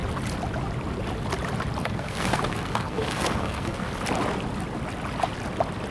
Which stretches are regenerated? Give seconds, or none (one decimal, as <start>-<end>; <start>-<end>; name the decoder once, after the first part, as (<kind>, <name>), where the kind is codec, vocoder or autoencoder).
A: 1.8-3.9 (codec, SNAC)